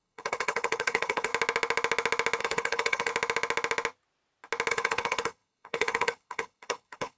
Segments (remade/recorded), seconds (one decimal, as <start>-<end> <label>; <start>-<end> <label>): 0.0-1.3 remade; 1.3-2.4 recorded; 2.4-3.1 remade; 3.1-4.7 recorded; 4.7-7.2 remade